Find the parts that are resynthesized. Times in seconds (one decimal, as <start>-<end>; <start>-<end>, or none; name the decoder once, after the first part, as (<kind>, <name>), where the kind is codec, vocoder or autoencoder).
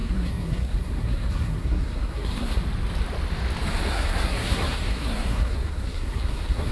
0.0-2.6 (codec, SNAC); 3.9-6.7